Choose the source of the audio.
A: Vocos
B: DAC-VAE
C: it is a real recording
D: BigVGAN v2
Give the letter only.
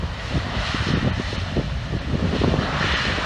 D